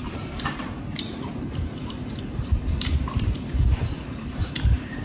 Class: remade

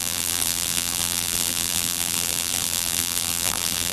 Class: remade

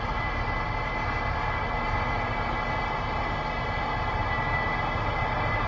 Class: recorded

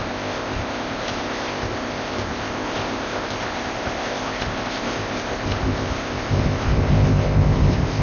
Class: remade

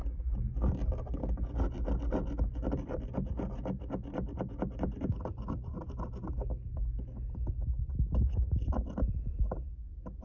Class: recorded